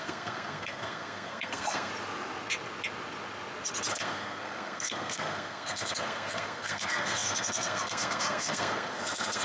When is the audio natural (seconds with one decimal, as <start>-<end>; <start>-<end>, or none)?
1.9-3.9